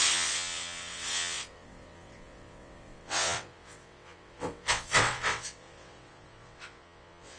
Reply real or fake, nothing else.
fake